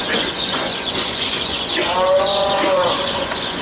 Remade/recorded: remade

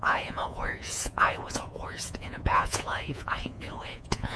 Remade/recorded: remade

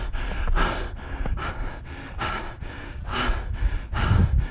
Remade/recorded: recorded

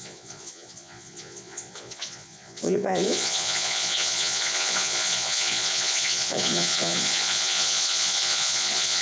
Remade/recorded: remade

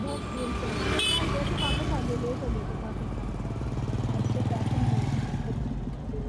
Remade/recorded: recorded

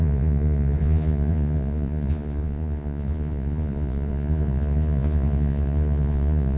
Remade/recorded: remade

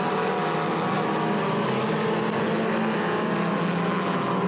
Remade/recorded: recorded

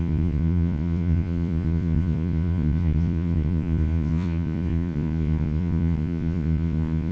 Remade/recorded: remade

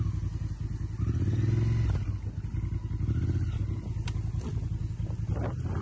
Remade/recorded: recorded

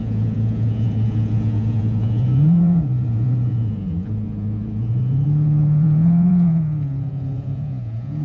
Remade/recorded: remade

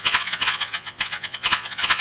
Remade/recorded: remade